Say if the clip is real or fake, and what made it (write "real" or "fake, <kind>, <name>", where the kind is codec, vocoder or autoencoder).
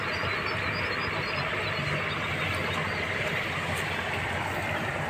real